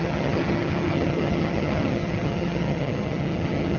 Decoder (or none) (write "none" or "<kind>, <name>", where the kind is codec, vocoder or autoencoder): vocoder, HiFi-GAN